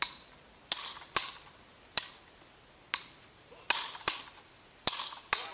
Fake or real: real